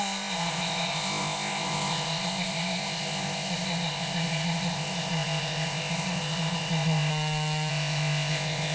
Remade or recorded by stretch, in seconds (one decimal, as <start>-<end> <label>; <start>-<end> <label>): 0.0-7.1 remade; 7.1-7.7 recorded; 7.7-8.7 remade